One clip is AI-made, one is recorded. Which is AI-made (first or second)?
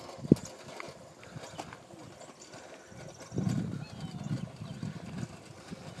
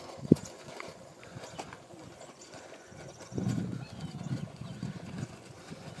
second